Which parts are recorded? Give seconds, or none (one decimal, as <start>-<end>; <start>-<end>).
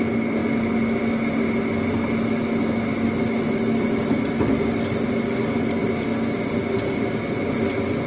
0.0-8.1